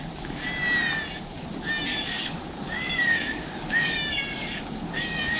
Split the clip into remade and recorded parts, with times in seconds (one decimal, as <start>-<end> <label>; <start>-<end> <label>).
0.0-1.9 recorded; 1.9-5.4 remade